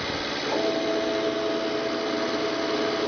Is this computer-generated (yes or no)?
no